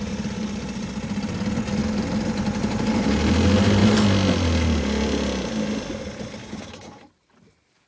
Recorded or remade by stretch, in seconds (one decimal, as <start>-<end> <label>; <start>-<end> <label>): 0.0-6.4 recorded; 6.4-7.0 remade; 7.0-7.9 recorded